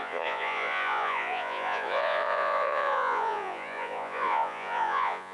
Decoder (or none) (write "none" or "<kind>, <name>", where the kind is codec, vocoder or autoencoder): vocoder, Vocos